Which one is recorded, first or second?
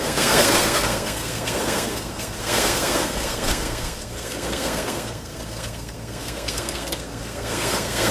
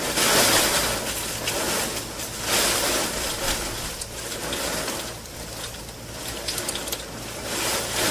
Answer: second